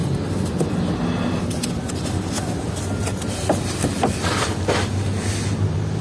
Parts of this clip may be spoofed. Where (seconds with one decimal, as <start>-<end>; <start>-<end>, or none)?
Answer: none

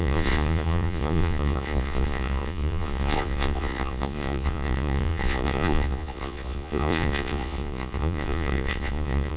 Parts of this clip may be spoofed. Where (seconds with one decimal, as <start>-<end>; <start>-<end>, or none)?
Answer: 0.0-9.4